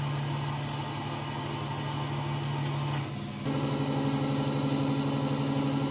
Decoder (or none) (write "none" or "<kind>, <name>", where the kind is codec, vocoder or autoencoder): none